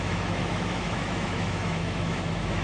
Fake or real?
fake